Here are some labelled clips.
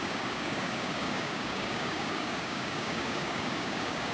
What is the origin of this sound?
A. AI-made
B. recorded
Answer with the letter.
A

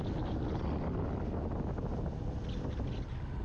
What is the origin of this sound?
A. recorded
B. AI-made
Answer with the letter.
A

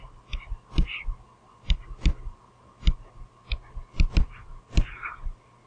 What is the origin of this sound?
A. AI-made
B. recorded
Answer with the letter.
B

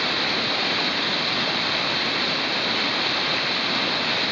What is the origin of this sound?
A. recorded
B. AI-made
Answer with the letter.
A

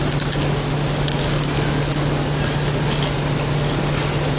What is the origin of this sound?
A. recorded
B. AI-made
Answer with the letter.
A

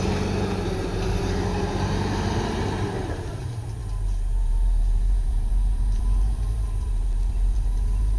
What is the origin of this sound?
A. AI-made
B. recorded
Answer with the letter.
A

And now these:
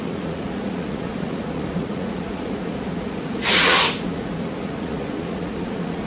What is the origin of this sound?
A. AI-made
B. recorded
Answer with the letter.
A